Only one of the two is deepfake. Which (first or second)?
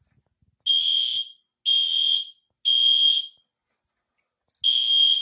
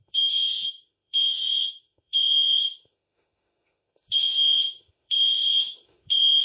second